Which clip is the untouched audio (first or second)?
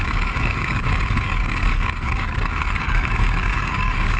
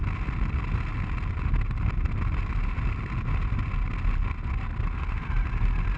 second